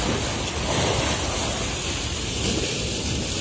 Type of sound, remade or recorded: recorded